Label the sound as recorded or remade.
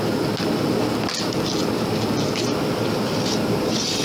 recorded